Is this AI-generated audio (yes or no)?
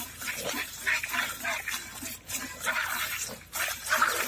no